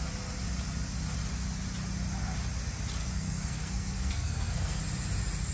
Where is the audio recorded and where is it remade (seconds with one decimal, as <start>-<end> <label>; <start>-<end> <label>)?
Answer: 0.0-3.0 recorded; 3.0-4.8 remade; 4.8-5.5 recorded